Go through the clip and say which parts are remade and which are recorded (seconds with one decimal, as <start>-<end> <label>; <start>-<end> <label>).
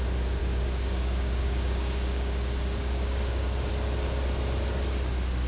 0.0-0.4 recorded; 0.4-3.7 remade; 3.7-5.5 recorded